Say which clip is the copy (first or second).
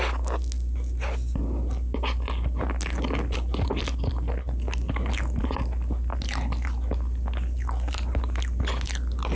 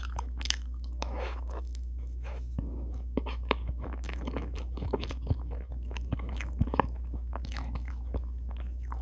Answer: second